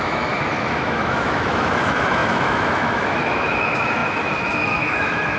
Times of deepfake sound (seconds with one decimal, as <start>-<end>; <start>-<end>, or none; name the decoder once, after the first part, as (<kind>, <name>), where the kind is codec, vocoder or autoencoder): 0.0-5.4 (autoencoder, DAC-VAE)